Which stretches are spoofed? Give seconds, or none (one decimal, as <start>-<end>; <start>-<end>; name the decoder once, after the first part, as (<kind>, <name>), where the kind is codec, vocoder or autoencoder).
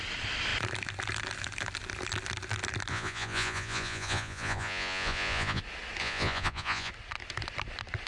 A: 2.9-5.6 (vocoder, Vocos); 6.0-6.9